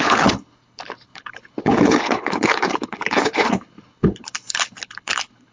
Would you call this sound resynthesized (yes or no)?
yes